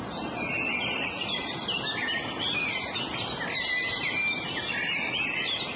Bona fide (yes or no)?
yes